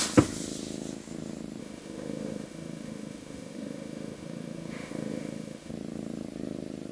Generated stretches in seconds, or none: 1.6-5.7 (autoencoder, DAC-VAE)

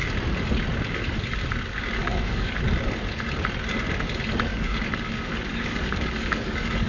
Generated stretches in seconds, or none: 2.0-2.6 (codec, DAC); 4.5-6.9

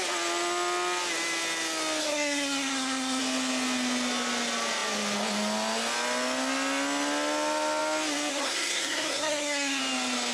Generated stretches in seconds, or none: 2.0-3.2 (codec, SNAC); 8.3-9.8

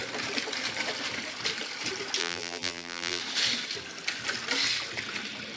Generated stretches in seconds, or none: 2.2-3.2 (vocoder, BigVGAN v2)

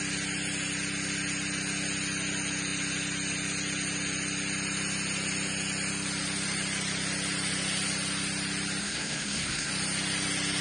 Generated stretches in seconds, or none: 8.8-9.7 (codec, SNAC)